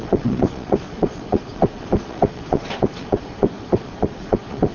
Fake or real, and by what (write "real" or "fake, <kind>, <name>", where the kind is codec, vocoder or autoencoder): fake, vocoder, Vocos